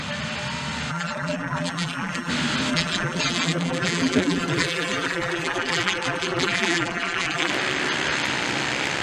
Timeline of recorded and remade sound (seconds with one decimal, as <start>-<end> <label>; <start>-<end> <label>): 0.0-0.9 recorded; 0.9-2.3 remade; 2.3-2.7 recorded; 2.7-7.5 remade; 7.5-9.0 recorded